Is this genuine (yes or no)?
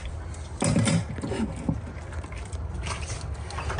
yes